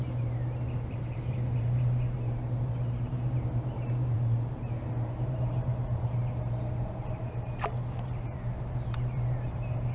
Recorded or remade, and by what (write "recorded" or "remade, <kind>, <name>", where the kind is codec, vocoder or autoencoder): remade, vocoder, BigVGAN v2